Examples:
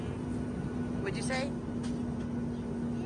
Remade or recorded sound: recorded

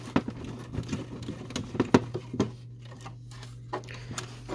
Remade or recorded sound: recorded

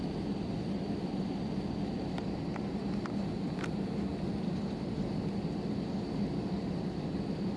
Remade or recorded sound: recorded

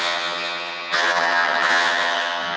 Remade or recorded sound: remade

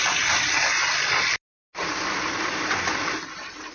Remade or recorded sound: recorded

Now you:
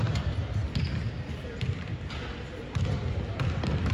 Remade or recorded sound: recorded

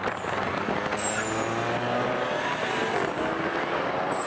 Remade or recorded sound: recorded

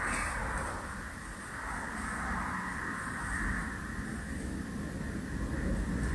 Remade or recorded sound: recorded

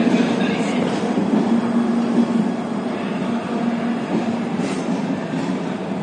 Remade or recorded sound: recorded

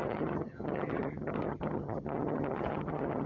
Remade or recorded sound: remade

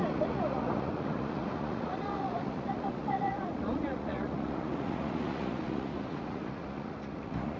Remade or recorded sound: remade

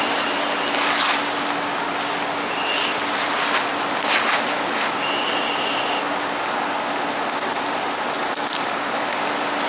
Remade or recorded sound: recorded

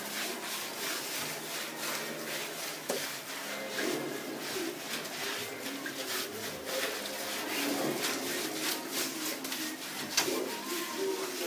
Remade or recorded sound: recorded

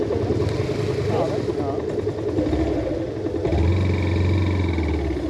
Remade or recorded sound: recorded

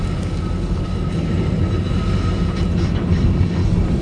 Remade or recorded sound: recorded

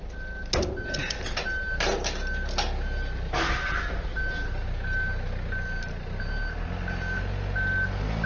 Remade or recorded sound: recorded